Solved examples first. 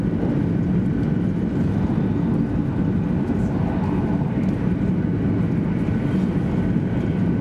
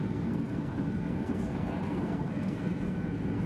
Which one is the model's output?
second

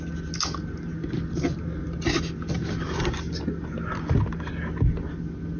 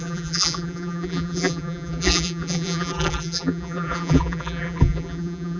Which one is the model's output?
second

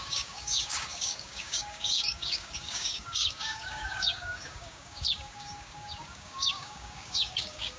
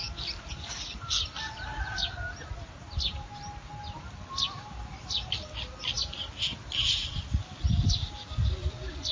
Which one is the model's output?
first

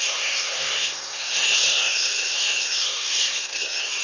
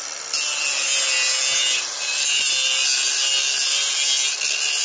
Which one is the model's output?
first